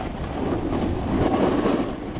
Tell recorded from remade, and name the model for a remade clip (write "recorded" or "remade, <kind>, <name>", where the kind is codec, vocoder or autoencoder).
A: recorded